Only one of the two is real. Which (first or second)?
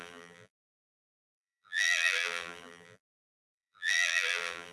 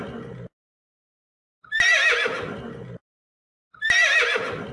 second